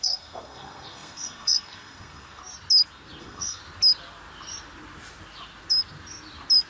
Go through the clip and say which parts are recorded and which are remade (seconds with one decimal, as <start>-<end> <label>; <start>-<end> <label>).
0.0-2.4 remade; 2.4-3.2 recorded; 3.2-3.6 remade; 3.6-6.7 recorded